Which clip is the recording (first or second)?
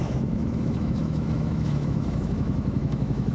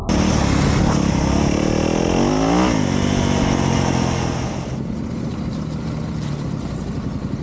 second